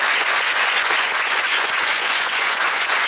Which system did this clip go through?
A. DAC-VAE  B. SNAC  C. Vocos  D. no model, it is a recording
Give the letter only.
C